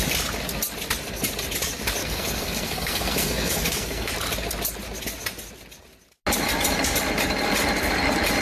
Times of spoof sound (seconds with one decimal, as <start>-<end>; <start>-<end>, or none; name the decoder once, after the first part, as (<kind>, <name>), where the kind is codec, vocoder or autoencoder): 2.0-4.1 (codec, SNAC)